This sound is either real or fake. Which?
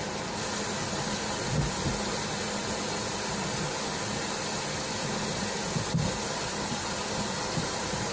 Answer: real